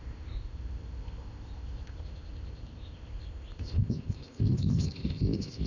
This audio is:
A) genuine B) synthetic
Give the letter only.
B